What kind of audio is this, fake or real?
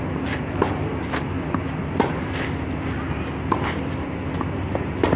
real